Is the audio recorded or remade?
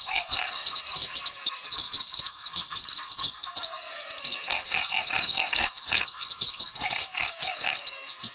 remade